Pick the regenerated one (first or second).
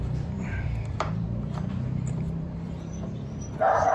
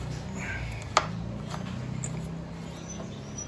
first